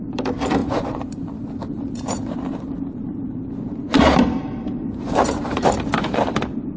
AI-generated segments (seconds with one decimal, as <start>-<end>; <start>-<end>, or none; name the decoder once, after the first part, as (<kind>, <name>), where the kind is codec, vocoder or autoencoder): 0.0-6.8 (vocoder, BigVGAN v2)